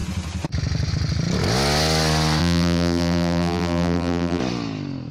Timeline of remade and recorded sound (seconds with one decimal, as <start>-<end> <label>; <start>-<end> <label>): 0.0-2.4 recorded; 2.4-4.4 remade; 4.4-5.1 recorded